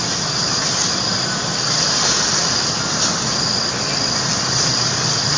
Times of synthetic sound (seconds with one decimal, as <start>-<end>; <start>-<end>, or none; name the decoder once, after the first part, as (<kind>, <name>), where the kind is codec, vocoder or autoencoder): none